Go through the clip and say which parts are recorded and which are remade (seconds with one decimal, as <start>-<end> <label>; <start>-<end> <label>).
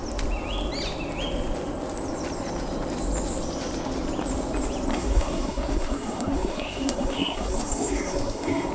0.0-4.9 recorded; 4.9-8.7 remade